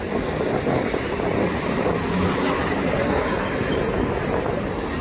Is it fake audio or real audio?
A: real